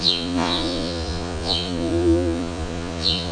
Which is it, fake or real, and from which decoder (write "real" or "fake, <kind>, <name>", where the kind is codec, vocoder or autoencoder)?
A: fake, vocoder, Vocos